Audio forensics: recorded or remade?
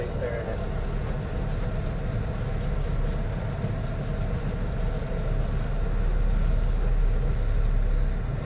recorded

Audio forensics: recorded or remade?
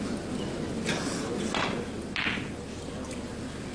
recorded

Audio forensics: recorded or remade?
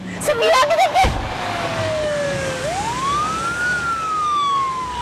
remade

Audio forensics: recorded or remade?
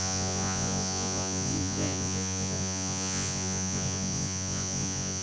remade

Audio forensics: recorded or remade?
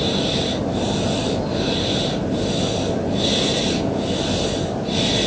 recorded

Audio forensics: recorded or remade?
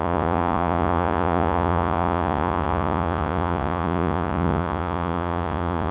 remade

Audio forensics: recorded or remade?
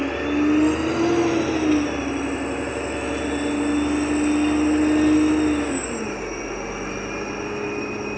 recorded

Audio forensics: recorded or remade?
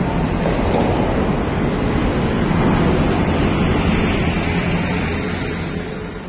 recorded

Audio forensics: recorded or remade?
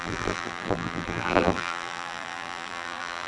remade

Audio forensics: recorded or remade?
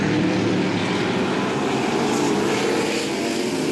remade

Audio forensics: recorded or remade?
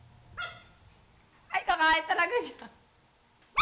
recorded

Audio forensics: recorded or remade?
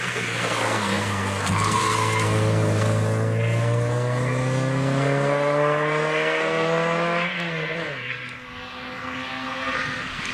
remade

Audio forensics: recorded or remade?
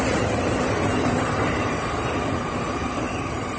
remade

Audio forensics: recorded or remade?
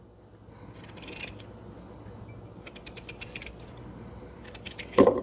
recorded